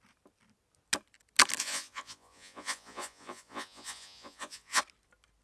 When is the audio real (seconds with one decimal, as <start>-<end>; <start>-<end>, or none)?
0.0-1.6; 4.8-5.4